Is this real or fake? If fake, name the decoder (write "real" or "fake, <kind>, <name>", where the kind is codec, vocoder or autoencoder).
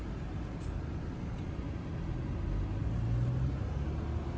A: real